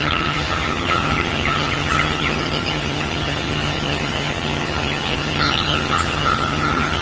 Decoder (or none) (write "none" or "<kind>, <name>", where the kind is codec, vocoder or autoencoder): vocoder, HiFi-GAN